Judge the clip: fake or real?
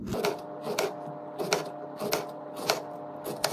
real